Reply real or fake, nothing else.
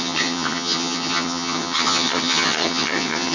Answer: fake